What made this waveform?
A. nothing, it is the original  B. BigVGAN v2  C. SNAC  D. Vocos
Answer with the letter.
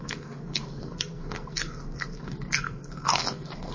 C